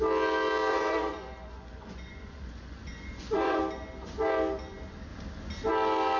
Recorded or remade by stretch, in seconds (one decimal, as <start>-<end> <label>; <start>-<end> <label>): 0.0-0.7 recorded; 0.7-3.6 remade; 3.6-6.2 recorded